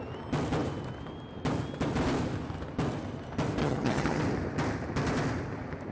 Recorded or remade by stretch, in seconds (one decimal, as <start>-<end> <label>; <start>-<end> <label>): 0.0-3.6 recorded; 3.6-4.2 remade; 4.2-5.9 recorded